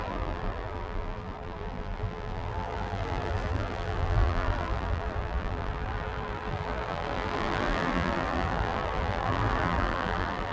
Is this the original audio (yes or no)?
no